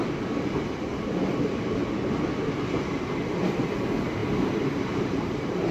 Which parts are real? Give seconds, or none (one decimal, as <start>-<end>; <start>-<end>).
0.0-4.2